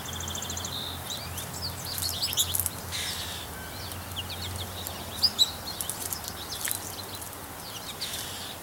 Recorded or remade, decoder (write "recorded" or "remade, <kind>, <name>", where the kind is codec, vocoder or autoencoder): recorded